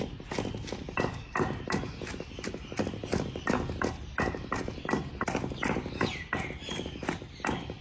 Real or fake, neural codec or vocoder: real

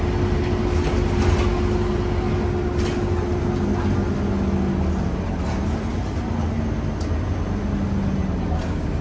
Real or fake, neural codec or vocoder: real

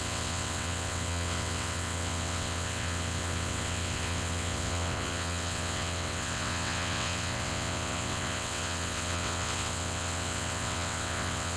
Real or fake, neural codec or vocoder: fake, vocoder, WaveNeXt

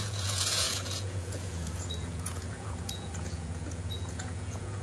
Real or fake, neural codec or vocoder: fake, vocoder, Vocos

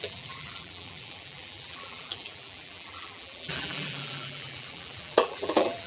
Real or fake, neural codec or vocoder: fake, vocoder, BigVGAN v2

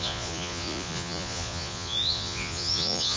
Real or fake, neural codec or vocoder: fake, vocoder, Vocos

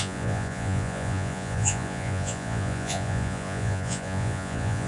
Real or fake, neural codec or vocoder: fake, vocoder, Vocos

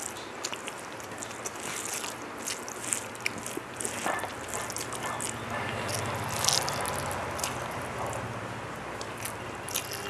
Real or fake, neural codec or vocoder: real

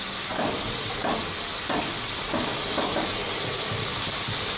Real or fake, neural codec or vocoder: fake, vocoder, BigVGAN v2